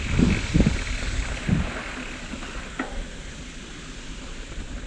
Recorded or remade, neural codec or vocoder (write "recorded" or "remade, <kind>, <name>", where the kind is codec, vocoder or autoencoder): recorded